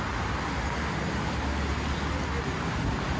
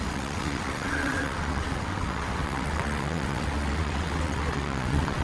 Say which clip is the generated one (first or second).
second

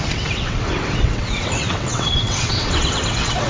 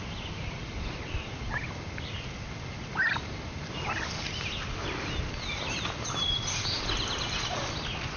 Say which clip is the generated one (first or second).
first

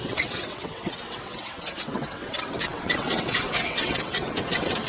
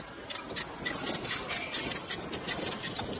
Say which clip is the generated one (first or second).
first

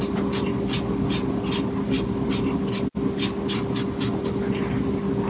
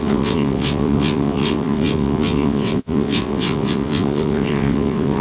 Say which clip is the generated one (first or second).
second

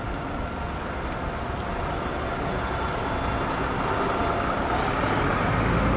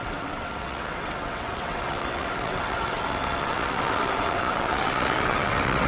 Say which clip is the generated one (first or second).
second